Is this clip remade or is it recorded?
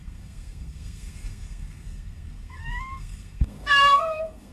remade